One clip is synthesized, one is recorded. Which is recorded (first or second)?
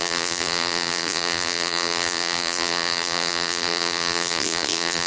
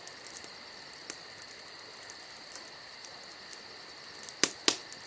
second